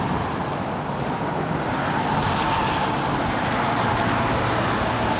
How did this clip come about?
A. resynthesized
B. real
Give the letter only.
B